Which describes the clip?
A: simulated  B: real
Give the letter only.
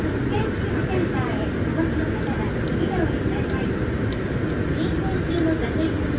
B